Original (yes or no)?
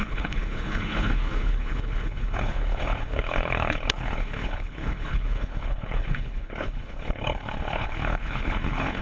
no